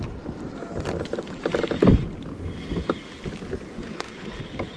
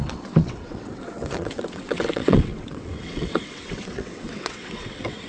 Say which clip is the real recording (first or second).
first